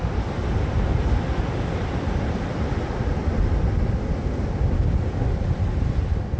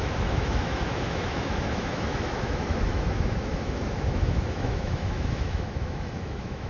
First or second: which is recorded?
first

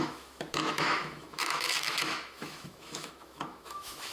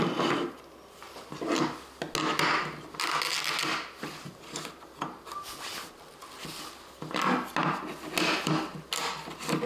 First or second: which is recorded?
second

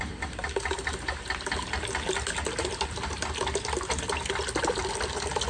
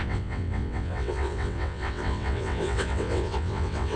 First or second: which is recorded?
first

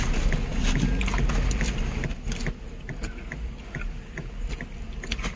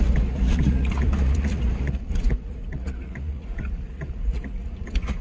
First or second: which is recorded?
first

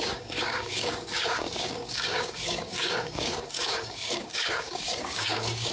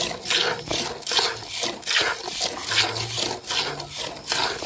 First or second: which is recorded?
second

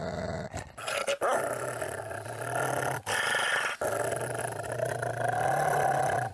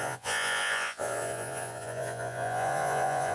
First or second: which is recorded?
first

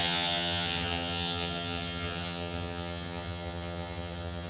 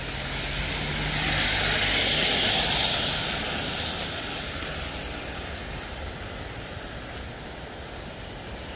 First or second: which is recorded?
second